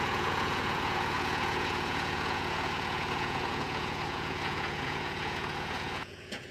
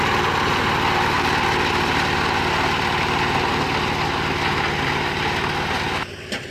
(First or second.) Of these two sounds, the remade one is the first